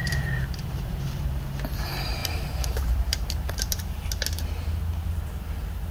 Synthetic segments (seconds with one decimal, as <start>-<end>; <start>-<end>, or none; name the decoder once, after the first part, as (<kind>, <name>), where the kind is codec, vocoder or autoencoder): 0.0-1.3 (vocoder, BigVGAN v2); 2.2-4.2